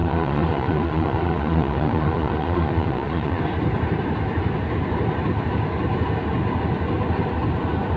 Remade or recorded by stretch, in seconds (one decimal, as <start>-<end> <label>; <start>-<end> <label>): 0.0-3.4 remade; 3.4-8.0 recorded